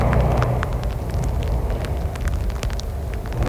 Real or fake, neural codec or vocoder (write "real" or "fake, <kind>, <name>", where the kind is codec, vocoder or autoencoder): real